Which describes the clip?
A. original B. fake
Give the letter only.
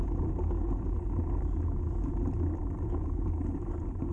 A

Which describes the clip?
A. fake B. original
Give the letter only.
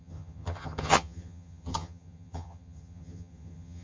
A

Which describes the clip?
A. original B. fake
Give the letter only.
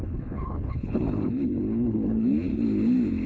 B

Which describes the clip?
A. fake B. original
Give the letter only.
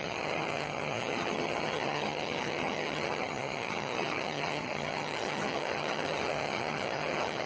A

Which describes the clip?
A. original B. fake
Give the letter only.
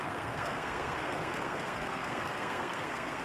B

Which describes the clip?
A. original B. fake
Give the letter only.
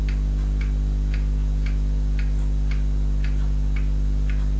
A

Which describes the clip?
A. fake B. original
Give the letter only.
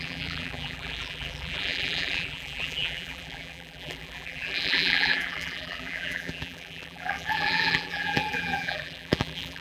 A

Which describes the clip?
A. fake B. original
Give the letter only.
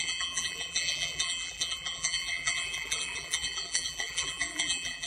A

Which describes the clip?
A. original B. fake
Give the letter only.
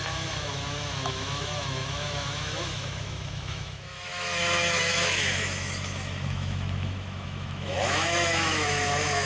B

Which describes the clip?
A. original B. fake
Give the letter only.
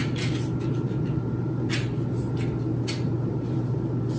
A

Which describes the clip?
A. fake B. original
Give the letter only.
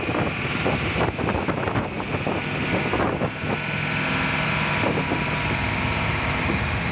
B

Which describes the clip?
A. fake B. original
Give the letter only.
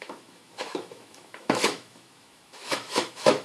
A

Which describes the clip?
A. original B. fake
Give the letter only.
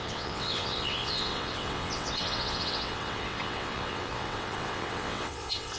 B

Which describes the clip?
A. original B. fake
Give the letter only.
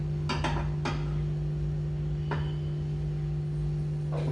A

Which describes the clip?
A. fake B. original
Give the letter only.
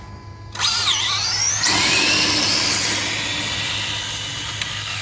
B